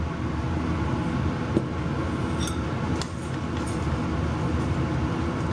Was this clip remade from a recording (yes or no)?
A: no